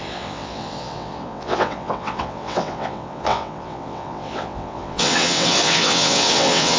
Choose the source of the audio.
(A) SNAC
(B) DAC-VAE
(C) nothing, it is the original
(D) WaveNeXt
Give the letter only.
D